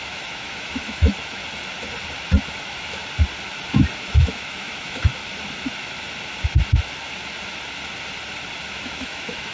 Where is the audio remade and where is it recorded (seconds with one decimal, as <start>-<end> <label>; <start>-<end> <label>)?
0.0-1.4 remade; 1.4-2.6 recorded; 2.6-3.0 remade; 3.0-4.0 recorded; 4.0-5.2 remade; 5.2-8.7 recorded; 8.7-9.5 remade